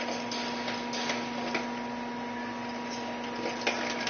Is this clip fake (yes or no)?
no